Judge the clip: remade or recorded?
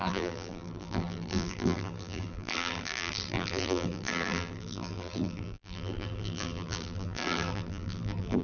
remade